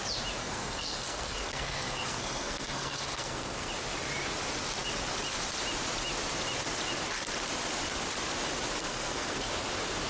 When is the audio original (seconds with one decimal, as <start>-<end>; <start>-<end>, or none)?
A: 0.0-0.4; 3.7-8.8; 9.5-10.1